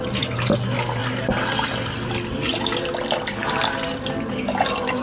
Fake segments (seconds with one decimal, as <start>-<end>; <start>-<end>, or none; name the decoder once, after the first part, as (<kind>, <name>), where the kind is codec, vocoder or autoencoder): none